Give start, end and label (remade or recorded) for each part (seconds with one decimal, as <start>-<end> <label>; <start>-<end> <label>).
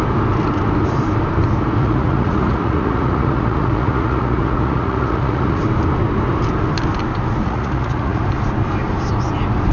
0.0-1.8 recorded; 1.8-5.6 remade; 5.6-7.4 recorded; 7.4-8.2 remade; 8.2-9.7 recorded